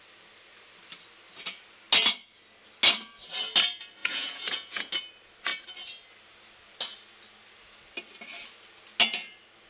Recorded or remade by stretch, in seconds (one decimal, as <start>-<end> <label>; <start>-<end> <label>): 0.0-4.0 recorded; 4.0-4.9 remade; 4.9-9.7 recorded